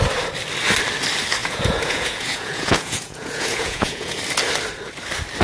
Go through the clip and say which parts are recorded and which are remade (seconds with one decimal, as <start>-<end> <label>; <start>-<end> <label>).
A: 0.0-1.4 recorded; 1.4-4.2 remade; 4.2-5.4 recorded